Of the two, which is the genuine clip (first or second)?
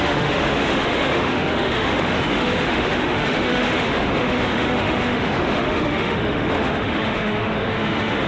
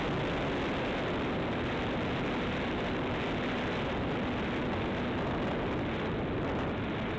second